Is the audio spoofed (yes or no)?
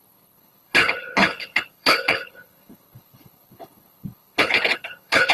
yes